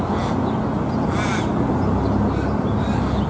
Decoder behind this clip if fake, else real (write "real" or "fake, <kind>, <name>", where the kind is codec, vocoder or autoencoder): real